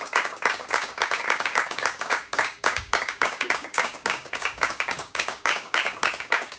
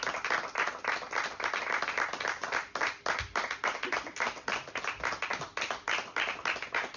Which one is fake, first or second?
first